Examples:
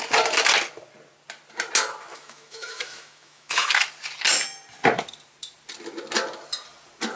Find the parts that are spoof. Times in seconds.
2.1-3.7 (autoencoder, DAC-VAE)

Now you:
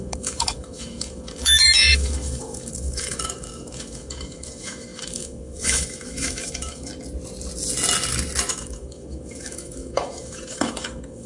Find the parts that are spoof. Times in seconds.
0.0-6.9 (autoencoder, DAC-VAE); 8.5-11.3

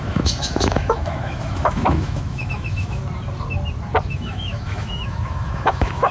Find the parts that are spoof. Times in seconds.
0.0-3.0 (autoencoder, DAC-VAE); 4.1-6.1

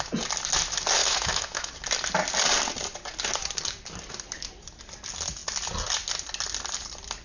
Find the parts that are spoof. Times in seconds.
1.0-1.7 (autoencoder, DAC-VAE)

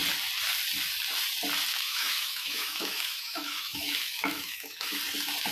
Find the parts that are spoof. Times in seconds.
1.7-5.0 (autoencoder, DAC-VAE)